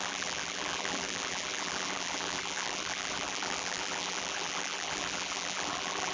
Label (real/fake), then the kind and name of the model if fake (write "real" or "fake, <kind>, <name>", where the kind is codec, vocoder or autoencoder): fake, vocoder, BigVGAN v2